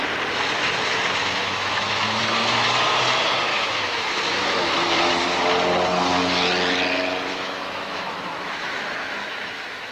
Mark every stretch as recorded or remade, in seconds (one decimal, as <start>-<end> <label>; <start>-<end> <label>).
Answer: 0.0-1.2 recorded; 1.2-2.2 remade; 2.2-3.5 recorded; 3.5-5.1 remade; 5.1-7.3 recorded; 7.3-9.9 remade